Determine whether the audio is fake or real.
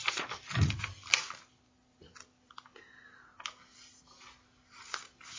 real